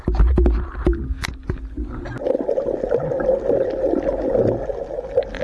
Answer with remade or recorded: recorded